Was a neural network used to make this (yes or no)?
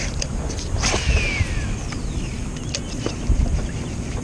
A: no